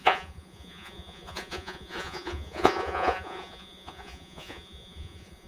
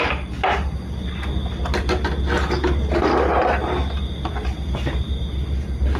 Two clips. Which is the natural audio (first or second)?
second